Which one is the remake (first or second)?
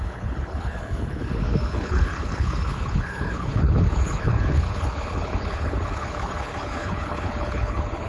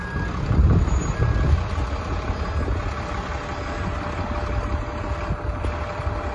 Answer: first